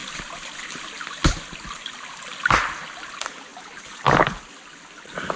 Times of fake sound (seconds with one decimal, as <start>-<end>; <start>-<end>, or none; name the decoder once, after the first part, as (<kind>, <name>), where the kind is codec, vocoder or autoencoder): none